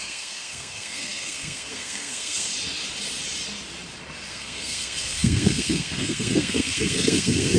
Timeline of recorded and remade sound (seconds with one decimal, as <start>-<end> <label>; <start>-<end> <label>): 0.0-2.5 remade; 2.5-4.3 recorded; 4.3-7.6 remade